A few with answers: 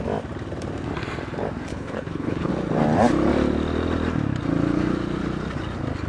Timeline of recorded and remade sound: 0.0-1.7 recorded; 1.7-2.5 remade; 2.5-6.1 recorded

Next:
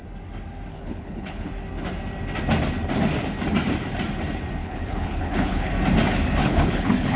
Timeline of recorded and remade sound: 0.0-0.7 recorded; 0.7-1.5 remade; 1.5-4.6 recorded; 4.6-5.7 remade; 5.7-6.4 recorded; 6.4-7.2 remade

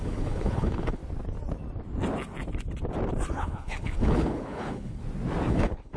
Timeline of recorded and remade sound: 0.0-1.0 remade; 1.0-3.3 recorded; 3.3-5.0 remade; 5.0-5.5 recorded; 5.5-6.0 remade